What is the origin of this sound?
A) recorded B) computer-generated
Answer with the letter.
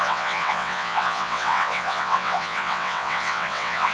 B